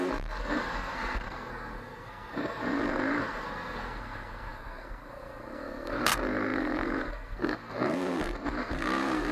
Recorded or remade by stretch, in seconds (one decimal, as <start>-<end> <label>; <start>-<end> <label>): 0.0-9.3 remade